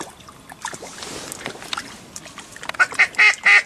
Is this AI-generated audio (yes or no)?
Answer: no